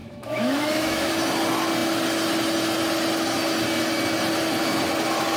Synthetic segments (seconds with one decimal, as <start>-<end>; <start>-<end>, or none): 0.0-1.1